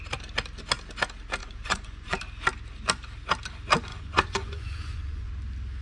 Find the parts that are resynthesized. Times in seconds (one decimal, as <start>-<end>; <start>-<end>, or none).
1.4-2.2; 3.9-5.3